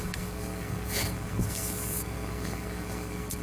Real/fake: fake